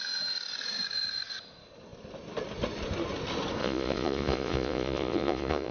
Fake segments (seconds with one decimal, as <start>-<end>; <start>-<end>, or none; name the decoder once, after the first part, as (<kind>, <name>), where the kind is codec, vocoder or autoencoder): 3.6-5.7 (vocoder, Vocos)